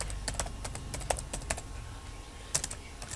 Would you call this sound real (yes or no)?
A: yes